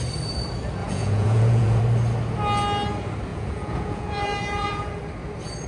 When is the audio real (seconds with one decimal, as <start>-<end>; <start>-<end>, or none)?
0.0-0.8; 1.8-3.3; 5.0-5.7